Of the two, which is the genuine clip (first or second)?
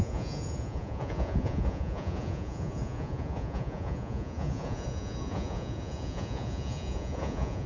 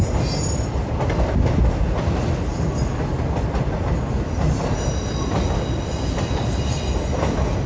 second